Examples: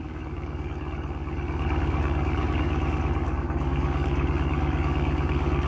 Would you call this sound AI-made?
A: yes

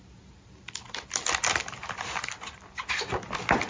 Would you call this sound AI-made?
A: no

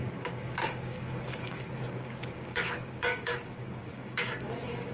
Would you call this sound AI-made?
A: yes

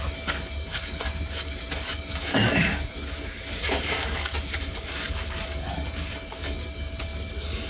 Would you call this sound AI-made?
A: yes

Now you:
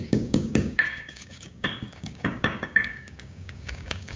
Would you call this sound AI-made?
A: yes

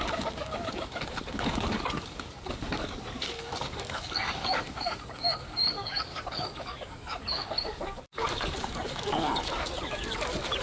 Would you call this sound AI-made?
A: yes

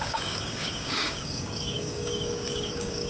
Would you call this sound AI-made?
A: yes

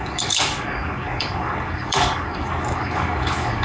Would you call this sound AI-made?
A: yes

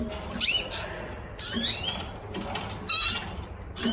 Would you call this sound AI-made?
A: no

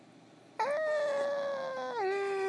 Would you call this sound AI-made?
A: no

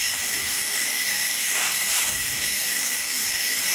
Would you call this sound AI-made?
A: yes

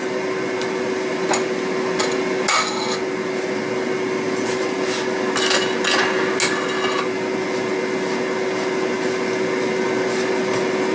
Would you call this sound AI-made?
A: no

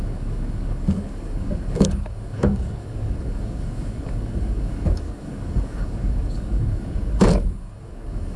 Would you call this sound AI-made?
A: yes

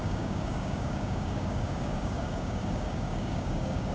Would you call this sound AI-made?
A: yes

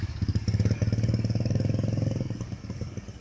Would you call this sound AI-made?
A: yes